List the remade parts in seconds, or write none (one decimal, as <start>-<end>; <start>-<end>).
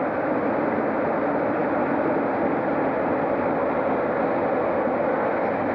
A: none